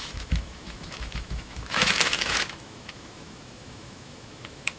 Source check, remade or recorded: remade